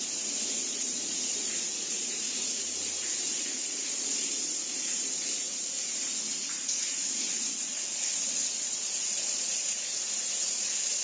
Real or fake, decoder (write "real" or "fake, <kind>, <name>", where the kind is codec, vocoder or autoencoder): fake, vocoder, Vocos